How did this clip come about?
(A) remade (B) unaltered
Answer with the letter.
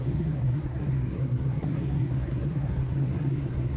A